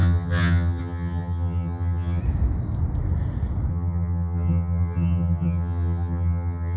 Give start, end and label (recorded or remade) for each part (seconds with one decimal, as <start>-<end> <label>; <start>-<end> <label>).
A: 0.0-2.2 remade; 2.2-3.7 recorded; 3.7-6.8 remade